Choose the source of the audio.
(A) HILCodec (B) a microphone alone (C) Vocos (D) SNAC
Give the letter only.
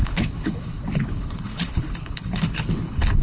A